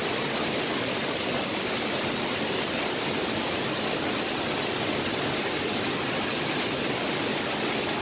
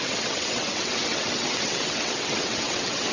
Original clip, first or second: first